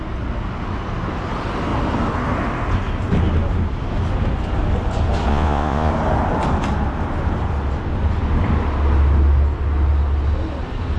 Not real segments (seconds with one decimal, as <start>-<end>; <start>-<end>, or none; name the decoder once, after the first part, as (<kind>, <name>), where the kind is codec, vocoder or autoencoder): 5.3-5.9 (vocoder, Vocos)